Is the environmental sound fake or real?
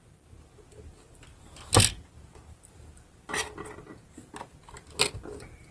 real